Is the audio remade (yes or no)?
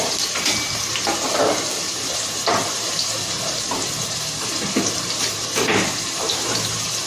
yes